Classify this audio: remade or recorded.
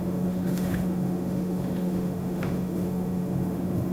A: remade